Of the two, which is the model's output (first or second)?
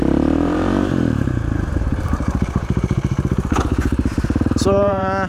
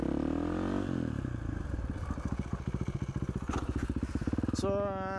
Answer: first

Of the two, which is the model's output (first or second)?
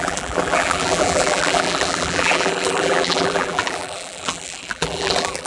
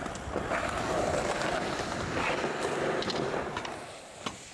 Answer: first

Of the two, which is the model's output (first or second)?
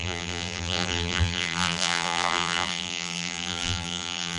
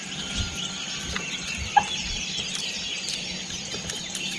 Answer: first